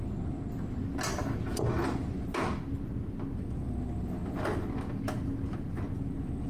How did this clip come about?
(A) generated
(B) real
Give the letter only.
B